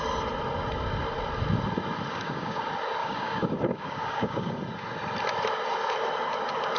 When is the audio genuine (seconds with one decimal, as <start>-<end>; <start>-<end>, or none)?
0.0-2.1; 2.6-3.0; 4.6-6.8